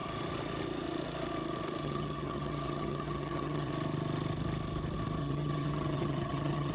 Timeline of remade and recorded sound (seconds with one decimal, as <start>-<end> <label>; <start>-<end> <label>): 0.0-1.8 recorded; 1.8-3.7 remade; 3.7-5.2 recorded; 5.2-6.7 remade